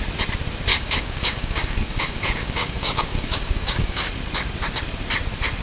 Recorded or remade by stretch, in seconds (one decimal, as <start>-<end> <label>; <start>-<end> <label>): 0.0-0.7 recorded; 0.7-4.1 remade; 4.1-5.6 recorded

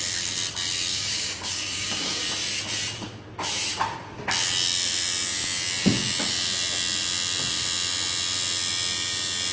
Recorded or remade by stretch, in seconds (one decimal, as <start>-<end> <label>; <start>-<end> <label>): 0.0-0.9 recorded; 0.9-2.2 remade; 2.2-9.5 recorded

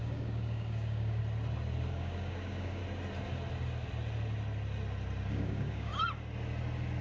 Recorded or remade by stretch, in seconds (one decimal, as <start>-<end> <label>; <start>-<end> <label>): 0.0-1.2 remade; 1.2-1.9 recorded; 1.9-2.8 remade; 2.8-5.3 recorded; 5.3-5.9 remade; 5.9-7.0 recorded

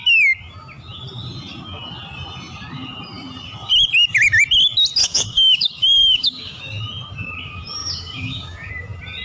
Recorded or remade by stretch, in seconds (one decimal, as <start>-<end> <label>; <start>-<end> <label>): 0.0-5.0 recorded; 5.0-6.6 remade; 6.6-7.8 recorded; 7.8-8.7 remade; 8.7-9.2 recorded

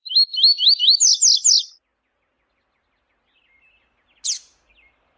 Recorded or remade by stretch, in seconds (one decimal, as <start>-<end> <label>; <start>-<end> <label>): 0.0-5.2 recorded